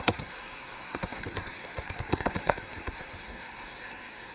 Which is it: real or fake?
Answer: fake